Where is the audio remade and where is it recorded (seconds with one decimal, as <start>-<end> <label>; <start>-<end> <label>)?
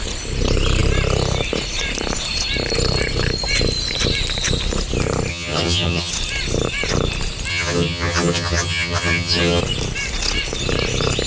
0.0-5.3 recorded; 5.3-6.1 remade; 6.1-7.5 recorded; 7.5-9.6 remade; 9.6-11.3 recorded